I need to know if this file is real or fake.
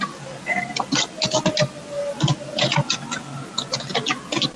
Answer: real